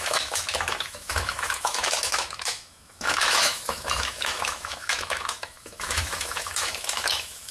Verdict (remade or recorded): remade